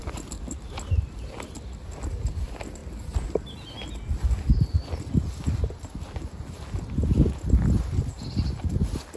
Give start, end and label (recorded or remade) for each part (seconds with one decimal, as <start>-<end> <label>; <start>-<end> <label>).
0.0-9.2 recorded